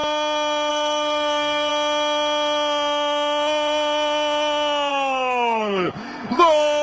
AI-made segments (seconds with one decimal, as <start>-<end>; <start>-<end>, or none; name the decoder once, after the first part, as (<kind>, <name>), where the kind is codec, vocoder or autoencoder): 0.7-1.7 (codec, SNAC); 4.9-6.8